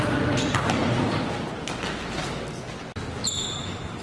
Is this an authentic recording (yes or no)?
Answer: yes